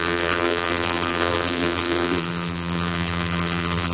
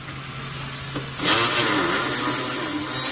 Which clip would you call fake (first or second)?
first